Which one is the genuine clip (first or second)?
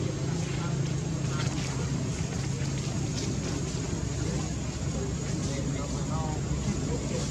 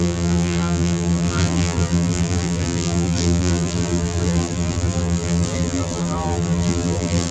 first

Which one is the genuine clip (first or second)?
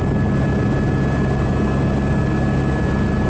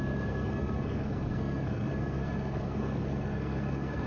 first